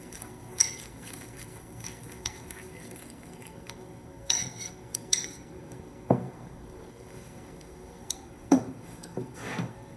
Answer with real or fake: fake